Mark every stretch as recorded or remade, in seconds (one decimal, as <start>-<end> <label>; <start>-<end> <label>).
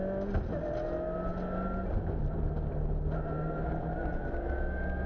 0.0-5.1 recorded